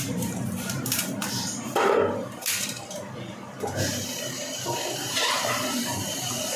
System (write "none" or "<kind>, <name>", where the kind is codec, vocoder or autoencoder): vocoder, BigVGAN v2